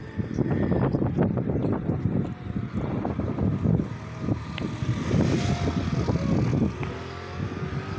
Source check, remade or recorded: recorded